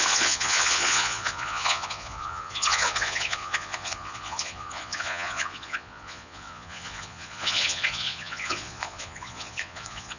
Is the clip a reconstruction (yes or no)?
yes